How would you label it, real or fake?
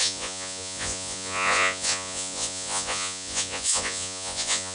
fake